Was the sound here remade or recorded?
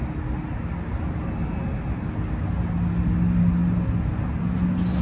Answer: recorded